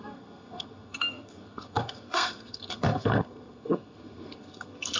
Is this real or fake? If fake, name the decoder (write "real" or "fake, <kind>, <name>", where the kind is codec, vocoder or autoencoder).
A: fake, codec, SNAC